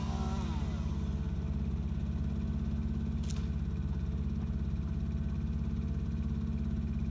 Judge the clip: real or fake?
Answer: real